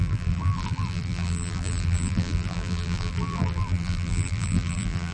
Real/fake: fake